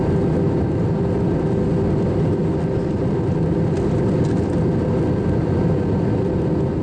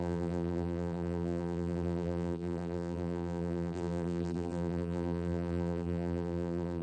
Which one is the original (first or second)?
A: first